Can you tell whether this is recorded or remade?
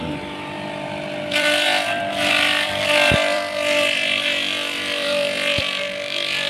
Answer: remade